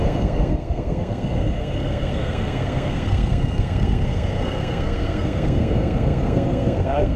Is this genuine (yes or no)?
no